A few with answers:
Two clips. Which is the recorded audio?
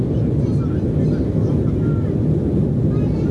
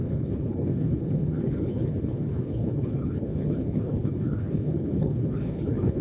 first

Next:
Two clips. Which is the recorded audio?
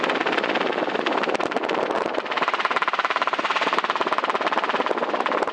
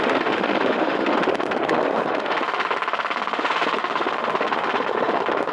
first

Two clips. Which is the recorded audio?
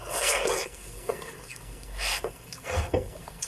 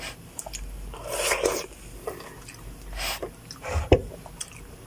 second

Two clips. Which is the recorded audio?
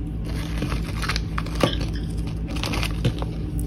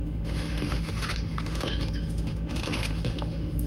first